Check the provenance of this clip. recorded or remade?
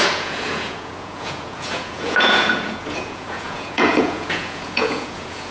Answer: remade